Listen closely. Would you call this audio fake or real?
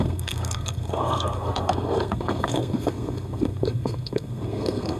fake